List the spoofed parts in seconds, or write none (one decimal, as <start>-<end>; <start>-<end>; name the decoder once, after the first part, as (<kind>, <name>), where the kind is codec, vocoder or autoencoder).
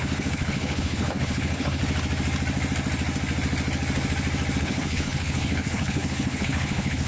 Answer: 0.0-1.8 (codec, HILCodec); 4.6-7.1